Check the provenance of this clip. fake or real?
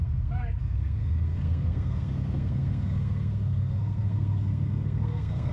fake